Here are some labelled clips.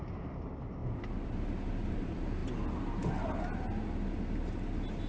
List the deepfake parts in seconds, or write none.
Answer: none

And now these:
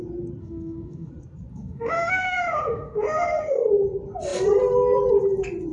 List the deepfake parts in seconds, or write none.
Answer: 0.4-1.1; 1.5-3.7

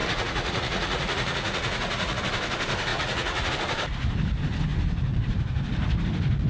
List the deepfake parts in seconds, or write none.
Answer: 0.0-2.2; 2.9-3.5

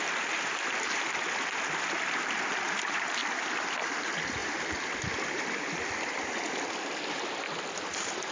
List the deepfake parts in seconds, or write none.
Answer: 4.4-5.6

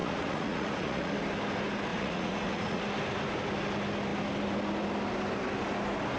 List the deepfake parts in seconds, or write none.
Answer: 0.0-1.1; 1.9-2.8

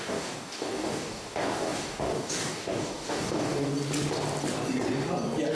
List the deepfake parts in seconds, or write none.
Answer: 0.0-3.7

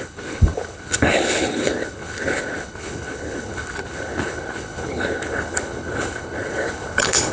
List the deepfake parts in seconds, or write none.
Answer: 0.0-7.3

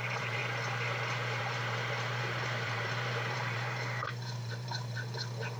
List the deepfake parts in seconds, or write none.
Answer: 0.0-0.4; 1.4-5.6